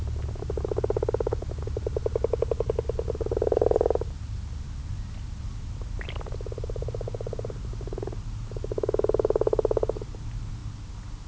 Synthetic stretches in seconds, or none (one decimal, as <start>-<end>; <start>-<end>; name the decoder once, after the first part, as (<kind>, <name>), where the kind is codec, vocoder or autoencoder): none